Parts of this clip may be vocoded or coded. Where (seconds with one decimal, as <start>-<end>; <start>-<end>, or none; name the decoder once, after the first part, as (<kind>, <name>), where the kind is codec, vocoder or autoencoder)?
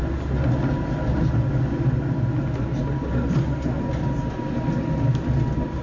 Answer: none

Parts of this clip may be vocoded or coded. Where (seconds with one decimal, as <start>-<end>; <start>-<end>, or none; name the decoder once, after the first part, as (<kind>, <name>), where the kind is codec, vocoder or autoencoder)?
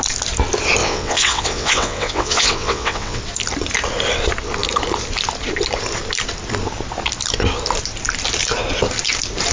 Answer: 0.8-3.2 (vocoder, WaveNeXt)